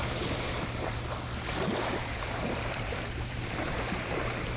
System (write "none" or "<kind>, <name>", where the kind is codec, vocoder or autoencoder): vocoder, BigVGAN v2